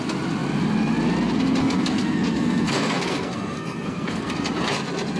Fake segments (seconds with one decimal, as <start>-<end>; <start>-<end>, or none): 1.6-4.3